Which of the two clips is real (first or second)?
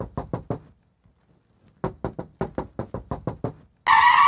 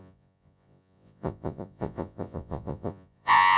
first